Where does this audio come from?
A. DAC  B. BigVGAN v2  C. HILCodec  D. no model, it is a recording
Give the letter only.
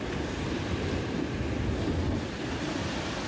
D